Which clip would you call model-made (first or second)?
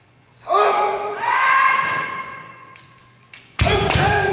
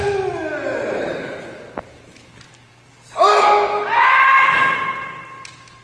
first